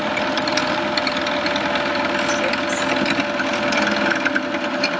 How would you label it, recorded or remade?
recorded